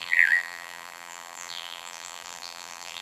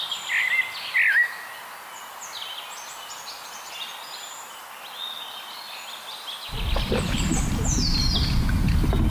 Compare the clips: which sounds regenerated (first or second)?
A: first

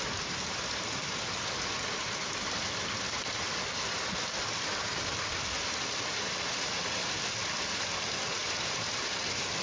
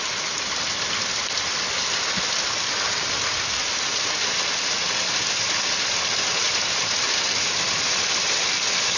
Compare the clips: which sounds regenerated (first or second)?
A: first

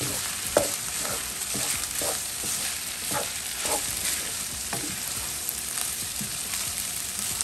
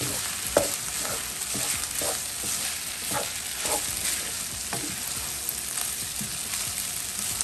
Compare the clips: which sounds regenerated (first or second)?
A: first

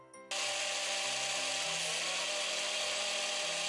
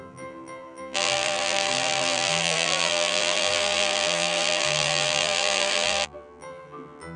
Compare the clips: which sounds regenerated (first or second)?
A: second